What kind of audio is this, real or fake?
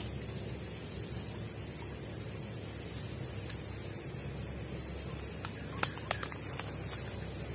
real